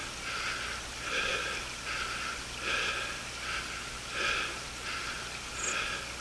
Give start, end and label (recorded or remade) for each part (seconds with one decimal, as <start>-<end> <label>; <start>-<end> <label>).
0.0-6.2 recorded

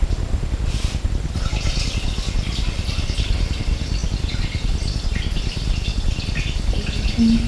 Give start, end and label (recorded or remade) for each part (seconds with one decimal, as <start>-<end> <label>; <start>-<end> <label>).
0.0-7.5 recorded

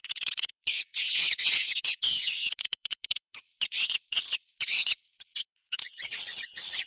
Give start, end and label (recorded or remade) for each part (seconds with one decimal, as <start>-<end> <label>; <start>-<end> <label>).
0.0-6.9 remade

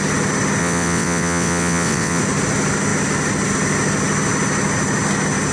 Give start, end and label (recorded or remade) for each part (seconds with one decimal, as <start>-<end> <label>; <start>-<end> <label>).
0.0-0.6 recorded; 0.6-2.2 remade; 2.2-5.5 recorded

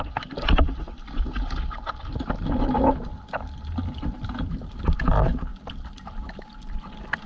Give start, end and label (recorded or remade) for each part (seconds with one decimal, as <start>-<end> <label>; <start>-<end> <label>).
0.0-7.3 recorded

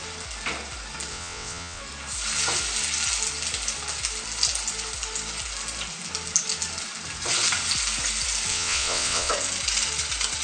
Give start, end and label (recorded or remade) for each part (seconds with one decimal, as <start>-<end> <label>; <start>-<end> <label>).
0.0-1.1 recorded; 1.1-1.8 remade; 1.8-8.5 recorded; 8.5-9.3 remade; 9.3-10.4 recorded